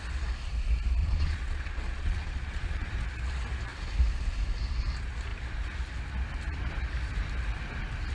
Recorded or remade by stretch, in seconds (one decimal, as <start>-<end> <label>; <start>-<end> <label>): 0.0-1.0 recorded; 1.0-2.9 remade; 2.9-8.1 recorded